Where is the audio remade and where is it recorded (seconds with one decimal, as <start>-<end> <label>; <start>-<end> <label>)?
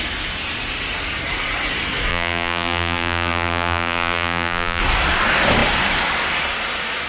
0.0-2.1 recorded; 2.1-4.8 remade; 4.8-7.1 recorded